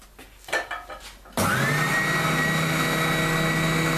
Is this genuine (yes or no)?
yes